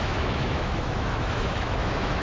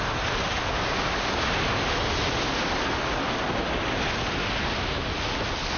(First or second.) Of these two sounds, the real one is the second